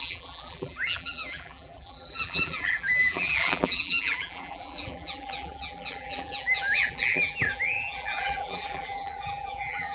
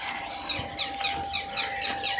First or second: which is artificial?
first